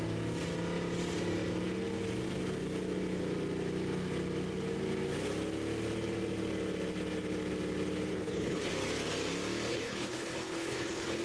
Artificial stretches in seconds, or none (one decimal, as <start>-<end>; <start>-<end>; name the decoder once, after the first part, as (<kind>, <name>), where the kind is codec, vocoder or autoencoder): 8.1-8.7 (codec, HILCodec); 9.7-11.2